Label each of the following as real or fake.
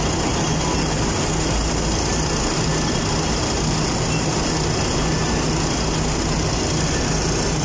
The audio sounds real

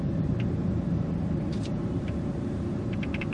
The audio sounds fake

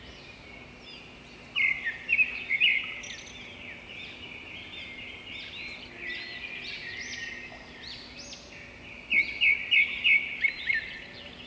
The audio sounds real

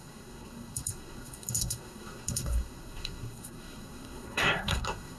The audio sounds fake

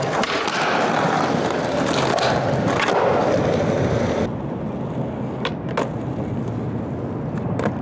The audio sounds real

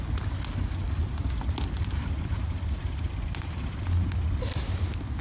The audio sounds real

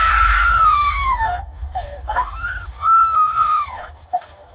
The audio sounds fake